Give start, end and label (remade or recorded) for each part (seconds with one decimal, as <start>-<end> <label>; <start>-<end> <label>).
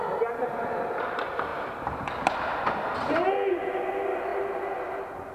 0.0-1.5 recorded; 1.5-2.4 remade; 2.4-5.3 recorded